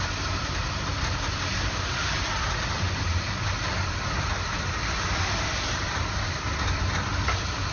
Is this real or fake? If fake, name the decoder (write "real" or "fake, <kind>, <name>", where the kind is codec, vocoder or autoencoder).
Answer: real